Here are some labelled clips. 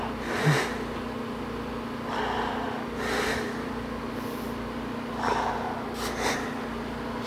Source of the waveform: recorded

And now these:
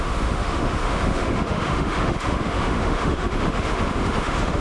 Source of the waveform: remade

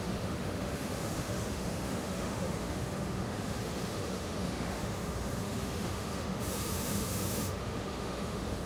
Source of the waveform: remade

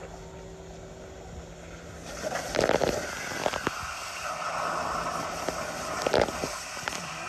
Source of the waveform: recorded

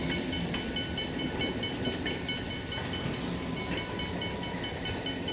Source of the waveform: recorded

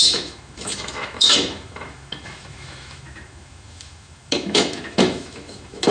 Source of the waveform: remade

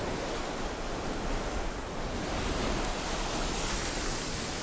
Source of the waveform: recorded